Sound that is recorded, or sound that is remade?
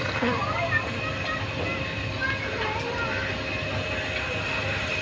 recorded